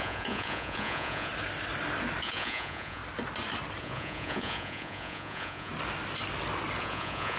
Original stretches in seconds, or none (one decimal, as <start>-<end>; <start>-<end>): 1.3-2.2; 3.0-3.8; 5.7-6.8